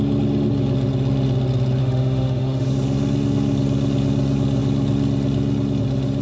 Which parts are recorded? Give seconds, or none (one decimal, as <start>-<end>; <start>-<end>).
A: 0.0-1.8; 2.7-6.2

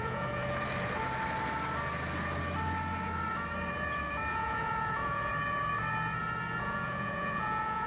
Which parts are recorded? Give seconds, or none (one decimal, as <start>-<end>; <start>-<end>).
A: 0.4-4.3; 5.3-6.6